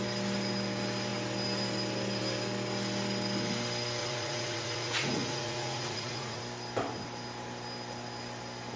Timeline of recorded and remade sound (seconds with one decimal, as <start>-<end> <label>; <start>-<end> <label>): 0.0-4.0 recorded; 4.0-6.4 remade; 6.4-8.8 recorded